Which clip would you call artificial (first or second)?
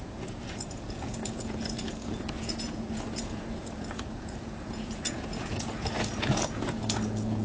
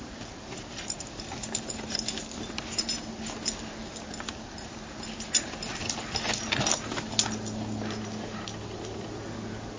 first